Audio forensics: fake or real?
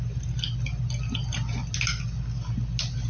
real